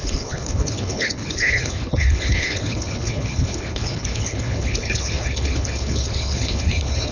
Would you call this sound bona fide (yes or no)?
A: no